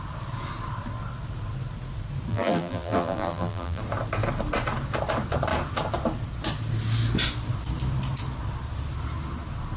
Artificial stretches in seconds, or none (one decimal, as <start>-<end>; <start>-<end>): 2.3-3.8